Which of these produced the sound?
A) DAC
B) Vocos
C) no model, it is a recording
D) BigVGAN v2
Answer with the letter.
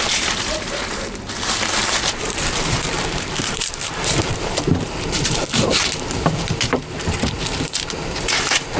D